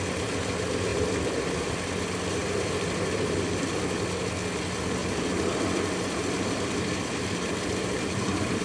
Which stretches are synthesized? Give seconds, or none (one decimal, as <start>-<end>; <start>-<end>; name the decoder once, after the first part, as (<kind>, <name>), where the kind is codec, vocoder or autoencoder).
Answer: 0.9-1.9 (vocoder, BigVGAN v2); 2.4-3.5; 5.0-8.6